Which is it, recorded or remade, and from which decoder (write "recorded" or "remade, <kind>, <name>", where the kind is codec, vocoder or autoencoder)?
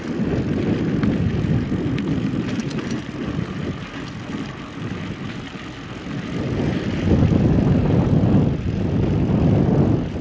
recorded